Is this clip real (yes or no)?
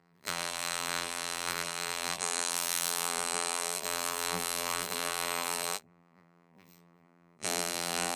no